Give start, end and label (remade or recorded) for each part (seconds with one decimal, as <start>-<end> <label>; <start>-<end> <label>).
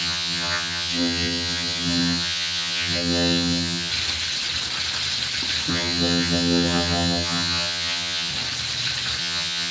0.0-3.9 remade; 3.9-5.7 recorded; 5.7-8.3 remade; 8.3-9.2 recorded; 9.2-9.7 remade